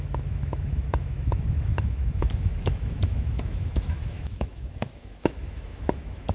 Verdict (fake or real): fake